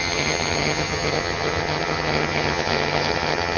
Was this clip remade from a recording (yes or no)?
yes